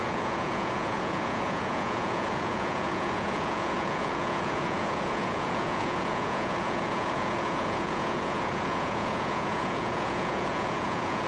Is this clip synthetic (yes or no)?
yes